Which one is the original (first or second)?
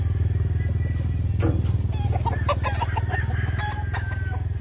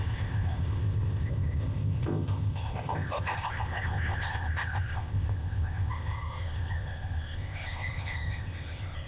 first